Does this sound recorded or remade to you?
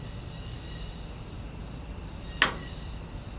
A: recorded